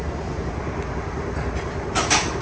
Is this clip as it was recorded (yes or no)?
yes